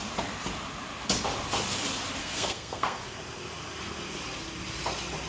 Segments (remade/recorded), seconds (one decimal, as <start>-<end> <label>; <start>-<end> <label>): 0.0-2.2 recorded; 2.2-3.0 remade; 3.0-5.3 recorded